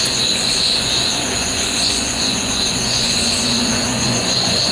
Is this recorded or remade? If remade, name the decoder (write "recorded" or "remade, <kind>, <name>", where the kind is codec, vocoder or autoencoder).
remade, vocoder, Vocos